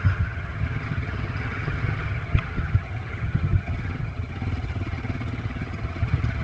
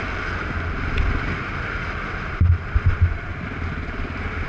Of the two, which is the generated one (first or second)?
first